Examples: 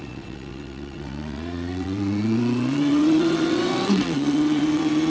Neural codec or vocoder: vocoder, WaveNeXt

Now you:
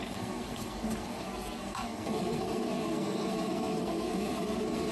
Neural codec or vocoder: codec, SNAC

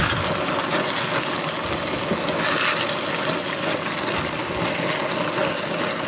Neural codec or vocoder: none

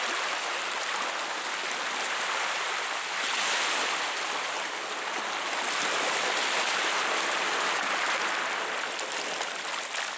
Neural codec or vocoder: none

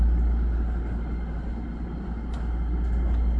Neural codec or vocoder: none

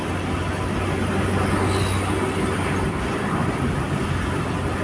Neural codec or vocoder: none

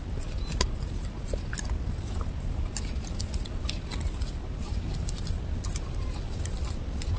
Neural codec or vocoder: none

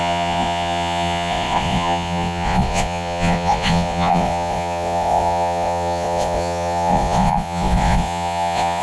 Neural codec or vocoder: vocoder, Vocos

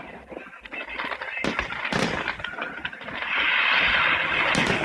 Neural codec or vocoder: none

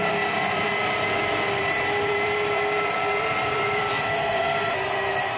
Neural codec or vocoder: vocoder, BigVGAN v2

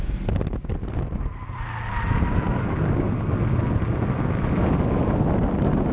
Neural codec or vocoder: none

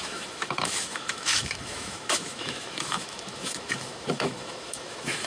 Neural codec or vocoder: autoencoder, DAC-VAE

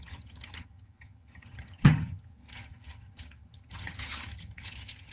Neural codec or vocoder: vocoder, HiFi-GAN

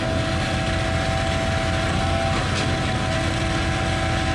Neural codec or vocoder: none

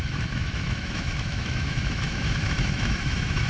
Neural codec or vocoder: autoencoder, DAC-VAE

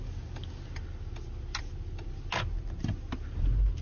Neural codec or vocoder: none